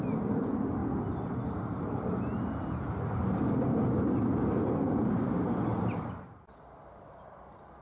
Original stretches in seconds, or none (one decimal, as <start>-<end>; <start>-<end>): 0.0-7.8